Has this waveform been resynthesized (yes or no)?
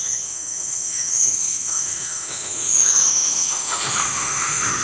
yes